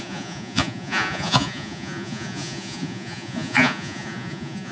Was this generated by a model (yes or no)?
yes